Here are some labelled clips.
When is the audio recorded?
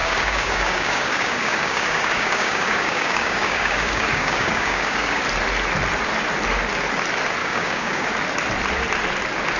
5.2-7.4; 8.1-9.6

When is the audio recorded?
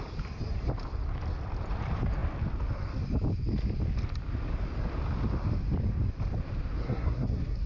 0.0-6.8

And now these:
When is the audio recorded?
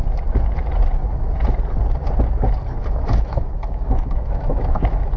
0.0-3.1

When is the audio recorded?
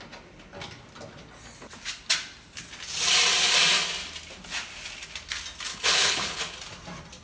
0.0-5.7; 6.4-7.2